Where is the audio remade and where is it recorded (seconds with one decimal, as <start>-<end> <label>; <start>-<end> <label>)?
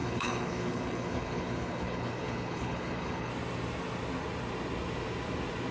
0.0-3.3 remade; 3.3-5.7 recorded